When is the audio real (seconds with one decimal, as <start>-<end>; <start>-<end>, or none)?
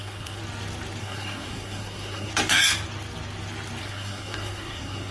0.4-1.0; 2.3-3.8